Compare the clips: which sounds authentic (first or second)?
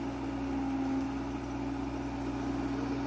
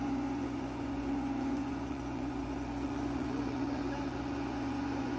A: first